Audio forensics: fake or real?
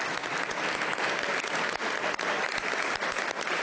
real